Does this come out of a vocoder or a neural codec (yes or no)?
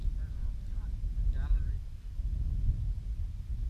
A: no